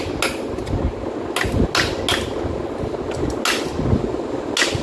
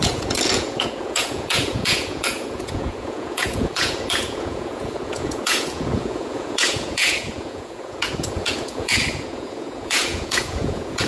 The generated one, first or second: second